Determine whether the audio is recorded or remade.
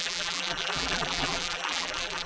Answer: remade